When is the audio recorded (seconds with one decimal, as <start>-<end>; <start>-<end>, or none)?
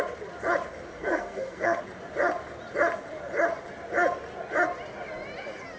0.0-0.9; 1.8-5.8